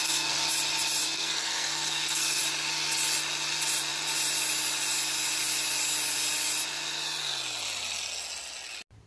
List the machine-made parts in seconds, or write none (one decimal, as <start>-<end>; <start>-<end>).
0.0-0.5; 1.0-2.4